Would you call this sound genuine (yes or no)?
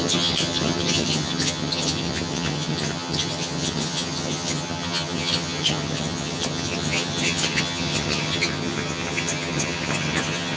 no